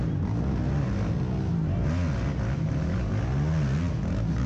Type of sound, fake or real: real